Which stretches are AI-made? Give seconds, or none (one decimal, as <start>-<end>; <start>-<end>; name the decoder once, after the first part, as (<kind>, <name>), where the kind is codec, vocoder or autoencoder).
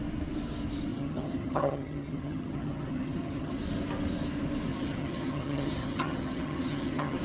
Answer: 0.9-3.6 (vocoder, HiFi-GAN); 4.7-7.2